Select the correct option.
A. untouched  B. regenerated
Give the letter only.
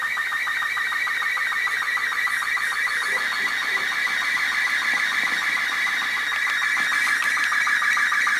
A